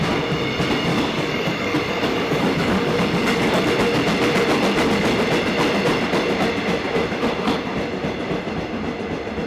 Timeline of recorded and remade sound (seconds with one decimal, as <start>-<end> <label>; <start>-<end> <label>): 0.0-0.9 recorded; 0.9-3.6 remade; 3.6-9.5 recorded